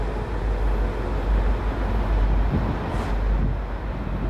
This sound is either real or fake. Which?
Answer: real